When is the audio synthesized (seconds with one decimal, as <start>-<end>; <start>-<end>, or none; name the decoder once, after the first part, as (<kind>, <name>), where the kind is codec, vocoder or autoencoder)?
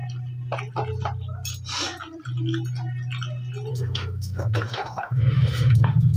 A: 3.7-6.2 (autoencoder, DAC-VAE)